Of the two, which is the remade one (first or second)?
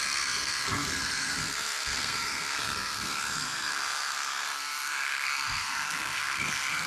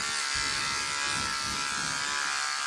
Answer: first